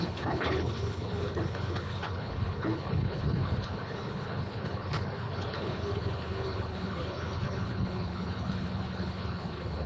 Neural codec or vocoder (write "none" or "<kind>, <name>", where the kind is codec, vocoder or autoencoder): codec, HILCodec